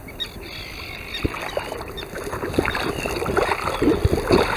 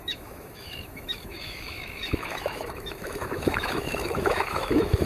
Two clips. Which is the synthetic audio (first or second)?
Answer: second